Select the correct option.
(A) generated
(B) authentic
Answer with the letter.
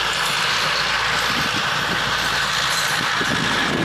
B